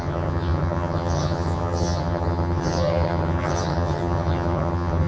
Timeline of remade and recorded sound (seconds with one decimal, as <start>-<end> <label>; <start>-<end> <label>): 0.0-5.1 remade

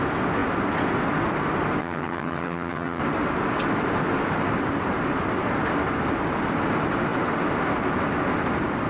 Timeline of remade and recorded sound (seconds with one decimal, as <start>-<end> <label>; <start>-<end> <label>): 0.0-1.8 recorded; 1.8-3.0 remade; 3.0-8.9 recorded

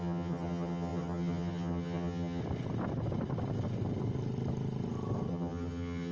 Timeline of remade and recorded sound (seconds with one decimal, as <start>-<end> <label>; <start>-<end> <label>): 0.0-2.4 remade; 2.4-5.3 recorded; 5.3-6.1 remade